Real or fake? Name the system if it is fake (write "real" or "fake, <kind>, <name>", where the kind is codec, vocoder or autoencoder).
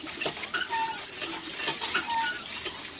real